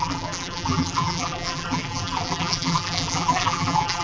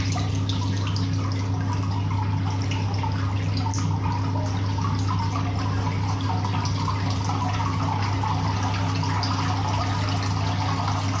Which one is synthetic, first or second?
first